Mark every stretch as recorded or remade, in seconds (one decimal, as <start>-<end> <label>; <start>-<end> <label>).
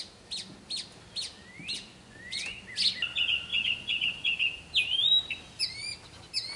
0.0-1.9 recorded; 1.9-2.6 remade; 2.6-3.5 recorded; 3.5-4.6 remade; 4.6-6.6 recorded